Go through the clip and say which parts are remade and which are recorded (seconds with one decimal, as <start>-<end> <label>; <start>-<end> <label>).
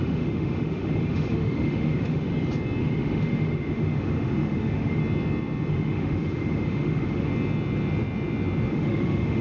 0.0-2.3 remade; 2.3-2.8 recorded; 2.8-5.0 remade; 5.0-5.7 recorded; 5.7-7.3 remade; 7.3-8.7 recorded; 8.7-9.4 remade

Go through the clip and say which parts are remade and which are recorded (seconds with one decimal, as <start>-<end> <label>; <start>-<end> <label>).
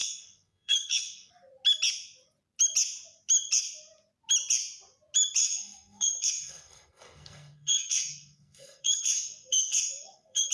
0.0-1.3 remade; 1.3-5.4 recorded; 5.4-10.5 remade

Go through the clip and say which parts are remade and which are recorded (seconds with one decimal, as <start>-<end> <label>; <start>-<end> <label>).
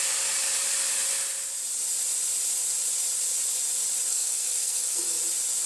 0.0-4.1 recorded; 4.1-5.2 remade; 5.2-5.7 recorded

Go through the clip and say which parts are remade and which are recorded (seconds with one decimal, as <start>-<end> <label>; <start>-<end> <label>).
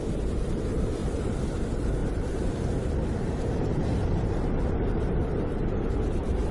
0.0-1.0 recorded; 1.0-1.6 remade; 1.6-2.0 recorded; 2.0-5.9 remade; 5.9-6.5 recorded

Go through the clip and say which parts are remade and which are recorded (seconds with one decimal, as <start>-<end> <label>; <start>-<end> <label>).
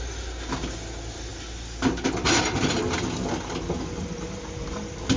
0.0-5.2 recorded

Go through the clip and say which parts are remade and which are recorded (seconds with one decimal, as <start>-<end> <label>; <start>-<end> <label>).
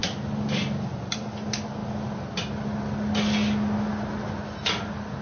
0.0-5.2 recorded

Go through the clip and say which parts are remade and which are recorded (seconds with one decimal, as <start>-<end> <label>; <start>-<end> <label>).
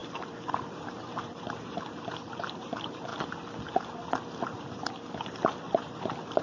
0.0-3.1 remade; 3.1-4.3 recorded; 4.3-6.4 remade